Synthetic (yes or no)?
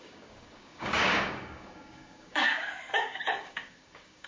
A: yes